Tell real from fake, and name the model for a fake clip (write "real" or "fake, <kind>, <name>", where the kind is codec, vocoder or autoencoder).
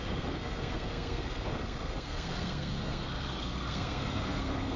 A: fake, codec, SNAC